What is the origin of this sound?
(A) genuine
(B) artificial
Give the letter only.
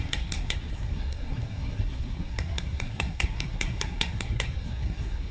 B